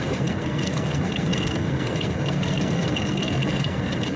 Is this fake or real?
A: fake